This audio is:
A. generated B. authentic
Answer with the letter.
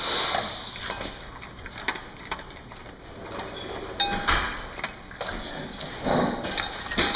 B